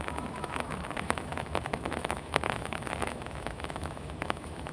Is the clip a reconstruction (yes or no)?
yes